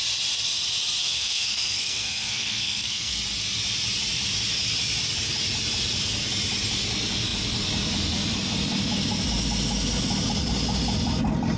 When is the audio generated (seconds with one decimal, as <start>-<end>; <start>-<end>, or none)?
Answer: 1.0-3.2